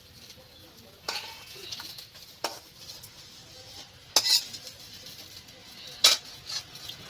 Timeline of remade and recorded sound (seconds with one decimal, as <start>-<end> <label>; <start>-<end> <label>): 0.0-0.6 recorded; 0.6-2.4 remade; 2.4-5.6 recorded; 5.6-7.1 remade